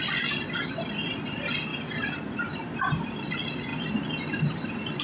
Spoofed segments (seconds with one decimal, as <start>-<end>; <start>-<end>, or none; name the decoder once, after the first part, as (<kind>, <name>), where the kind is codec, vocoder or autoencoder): none